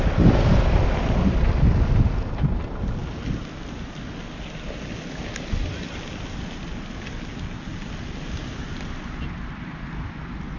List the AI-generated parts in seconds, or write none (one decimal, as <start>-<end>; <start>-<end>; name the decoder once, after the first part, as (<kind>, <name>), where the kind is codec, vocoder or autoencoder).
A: none